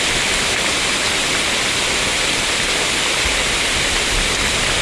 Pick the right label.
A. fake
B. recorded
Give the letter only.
B